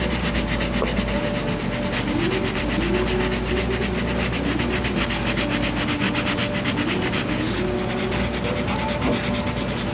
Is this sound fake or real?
real